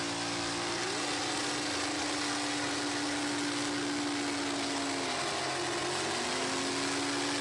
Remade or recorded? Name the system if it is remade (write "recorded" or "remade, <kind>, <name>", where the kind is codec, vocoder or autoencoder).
recorded